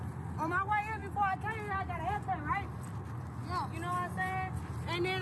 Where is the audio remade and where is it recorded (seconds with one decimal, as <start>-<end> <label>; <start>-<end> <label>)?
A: 0.0-5.2 recorded